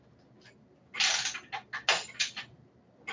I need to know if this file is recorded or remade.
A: recorded